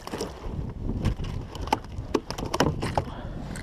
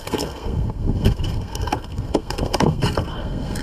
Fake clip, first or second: second